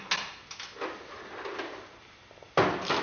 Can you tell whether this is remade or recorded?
recorded